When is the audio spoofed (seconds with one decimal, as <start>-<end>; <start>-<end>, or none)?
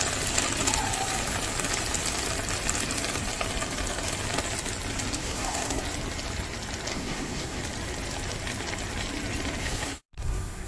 5.2-5.8; 6.9-7.6; 9.6-10.7